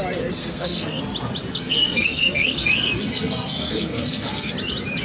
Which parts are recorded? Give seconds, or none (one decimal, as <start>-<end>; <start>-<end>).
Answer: 0.0-0.4; 1.0-1.5; 4.5-5.0